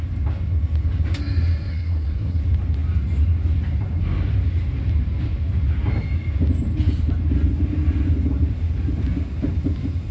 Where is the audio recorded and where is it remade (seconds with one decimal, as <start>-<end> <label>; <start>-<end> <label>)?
0.0-1.7 recorded; 1.7-2.4 remade; 2.4-10.1 recorded